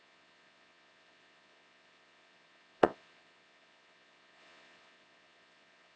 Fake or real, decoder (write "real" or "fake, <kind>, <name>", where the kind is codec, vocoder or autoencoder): fake, vocoder, Vocos